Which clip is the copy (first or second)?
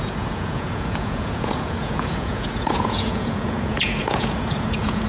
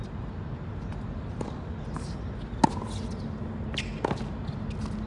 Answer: first